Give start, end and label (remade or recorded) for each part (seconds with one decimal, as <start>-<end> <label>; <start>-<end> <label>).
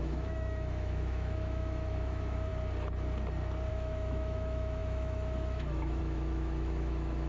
0.0-2.5 remade; 2.5-3.7 recorded; 3.7-7.3 remade